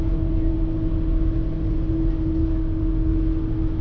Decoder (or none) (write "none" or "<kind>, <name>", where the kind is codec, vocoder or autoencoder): none